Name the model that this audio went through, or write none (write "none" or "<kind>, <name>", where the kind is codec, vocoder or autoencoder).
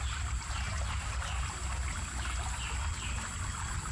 none